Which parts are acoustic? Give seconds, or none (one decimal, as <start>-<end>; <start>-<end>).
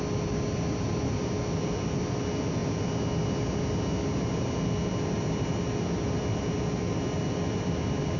0.0-8.2